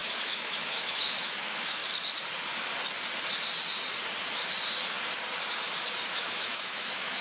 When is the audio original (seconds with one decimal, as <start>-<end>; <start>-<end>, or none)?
1.8-6.1